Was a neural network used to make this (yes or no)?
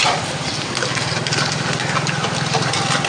no